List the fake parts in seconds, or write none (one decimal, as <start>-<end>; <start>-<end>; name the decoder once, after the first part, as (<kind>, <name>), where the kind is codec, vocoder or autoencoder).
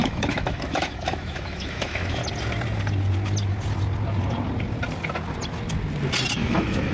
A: 0.0-2.2 (autoencoder, DAC-VAE); 6.3-6.9